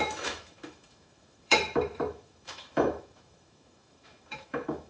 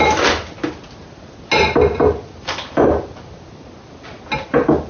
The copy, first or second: first